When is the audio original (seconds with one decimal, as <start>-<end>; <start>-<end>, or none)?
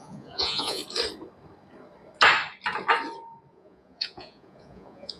0.8-3.5